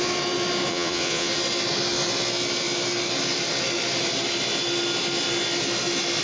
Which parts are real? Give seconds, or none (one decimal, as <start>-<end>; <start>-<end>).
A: 0.0-0.7; 1.3-6.2